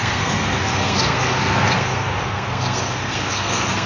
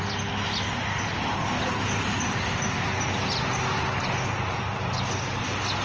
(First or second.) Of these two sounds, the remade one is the first